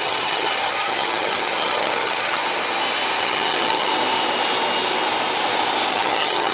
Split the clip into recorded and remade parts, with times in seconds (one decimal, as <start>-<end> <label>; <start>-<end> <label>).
0.0-2.4 remade; 2.4-3.2 recorded; 3.2-3.9 remade; 3.9-5.9 recorded; 5.9-6.5 remade